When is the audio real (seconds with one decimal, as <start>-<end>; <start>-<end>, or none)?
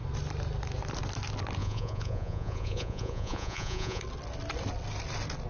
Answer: 0.0-1.6; 4.0-5.5